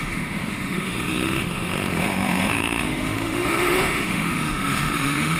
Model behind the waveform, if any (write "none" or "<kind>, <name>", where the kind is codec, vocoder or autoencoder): autoencoder, DAC-VAE